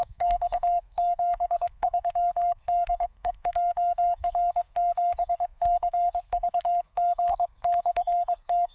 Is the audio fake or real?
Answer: fake